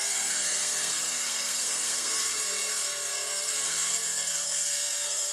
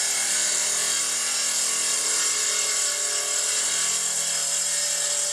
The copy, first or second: first